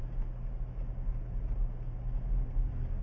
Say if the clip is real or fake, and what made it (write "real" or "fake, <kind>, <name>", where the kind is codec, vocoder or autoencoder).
real